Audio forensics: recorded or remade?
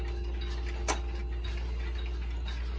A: recorded